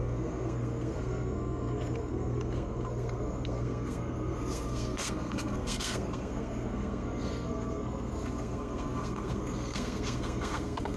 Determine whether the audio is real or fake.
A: fake